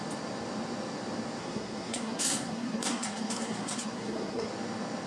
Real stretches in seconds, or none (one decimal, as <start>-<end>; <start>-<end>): 0.0-1.4; 4.5-5.1

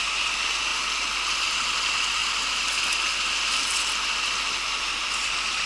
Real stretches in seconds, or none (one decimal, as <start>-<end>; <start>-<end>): 0.0-5.7

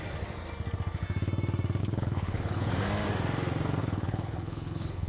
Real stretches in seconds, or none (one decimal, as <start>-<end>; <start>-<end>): 0.0-1.8; 2.7-3.8